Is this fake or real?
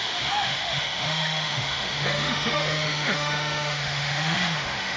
fake